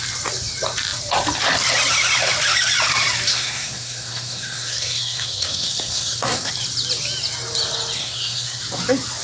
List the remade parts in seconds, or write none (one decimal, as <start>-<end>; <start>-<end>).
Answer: 3.3-6.5; 8.0-8.6

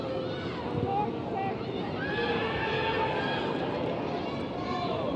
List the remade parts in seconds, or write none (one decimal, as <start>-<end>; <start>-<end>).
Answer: none

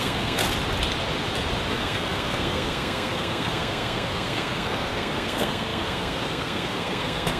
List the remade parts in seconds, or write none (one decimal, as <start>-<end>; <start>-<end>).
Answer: 0.0-0.4; 1.7-7.4